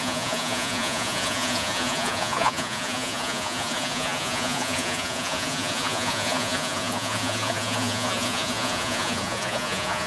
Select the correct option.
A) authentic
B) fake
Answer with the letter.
B